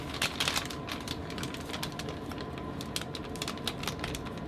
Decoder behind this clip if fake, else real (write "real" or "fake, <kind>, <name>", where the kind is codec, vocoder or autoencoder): real